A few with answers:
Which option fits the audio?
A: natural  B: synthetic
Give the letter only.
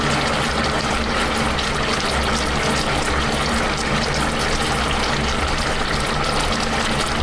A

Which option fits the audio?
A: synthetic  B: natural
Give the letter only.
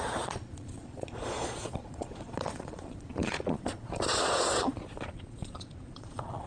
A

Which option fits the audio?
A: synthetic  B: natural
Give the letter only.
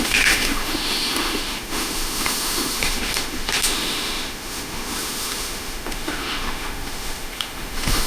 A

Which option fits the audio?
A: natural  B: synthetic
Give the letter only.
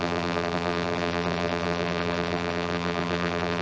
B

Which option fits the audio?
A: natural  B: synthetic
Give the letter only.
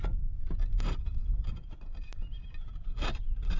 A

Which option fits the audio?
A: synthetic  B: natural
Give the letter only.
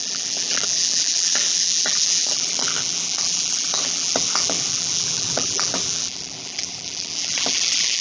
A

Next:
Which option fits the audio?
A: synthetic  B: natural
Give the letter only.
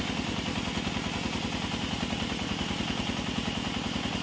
B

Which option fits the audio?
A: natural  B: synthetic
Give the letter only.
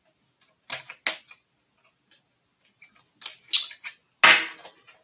A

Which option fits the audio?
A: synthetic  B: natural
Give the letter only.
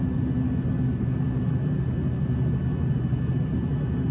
B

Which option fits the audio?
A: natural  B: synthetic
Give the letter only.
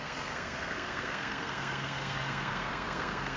B